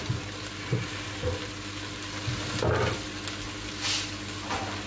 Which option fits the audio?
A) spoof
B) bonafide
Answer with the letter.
B